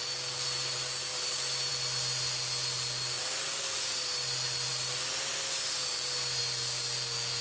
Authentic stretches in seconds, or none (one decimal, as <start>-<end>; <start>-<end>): 0.0-7.4